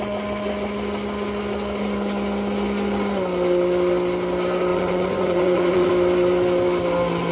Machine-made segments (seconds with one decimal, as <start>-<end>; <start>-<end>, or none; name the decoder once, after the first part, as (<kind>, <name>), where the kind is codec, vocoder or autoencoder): 4.7-5.9 (vocoder, Vocos)